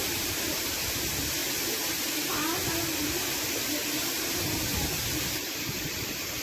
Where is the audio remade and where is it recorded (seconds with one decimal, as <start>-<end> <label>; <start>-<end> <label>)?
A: 0.0-1.4 remade; 1.4-5.2 recorded; 5.2-6.4 remade